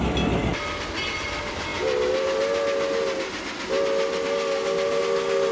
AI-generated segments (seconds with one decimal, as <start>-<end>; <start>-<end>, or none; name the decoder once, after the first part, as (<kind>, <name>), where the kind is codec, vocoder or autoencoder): none